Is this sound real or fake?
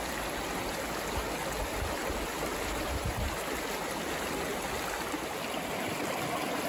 real